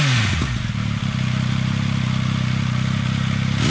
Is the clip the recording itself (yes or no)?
yes